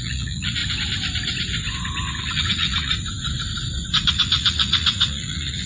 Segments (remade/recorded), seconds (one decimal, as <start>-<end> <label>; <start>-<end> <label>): 0.0-0.6 remade; 0.6-2.2 recorded; 2.2-2.9 remade; 2.9-4.1 recorded; 4.1-5.7 remade